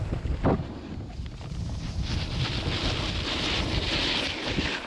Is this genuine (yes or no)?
yes